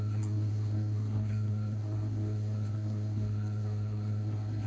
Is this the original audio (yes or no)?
no